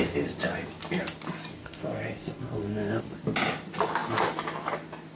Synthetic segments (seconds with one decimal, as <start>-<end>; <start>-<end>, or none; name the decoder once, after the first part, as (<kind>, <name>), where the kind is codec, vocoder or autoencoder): 1.6-3.0 (codec, SNAC)